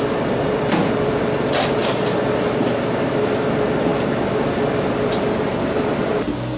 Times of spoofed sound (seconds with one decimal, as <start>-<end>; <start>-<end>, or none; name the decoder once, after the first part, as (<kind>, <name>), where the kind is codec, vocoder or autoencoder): 1.8-3.5 (vocoder, BigVGAN v2)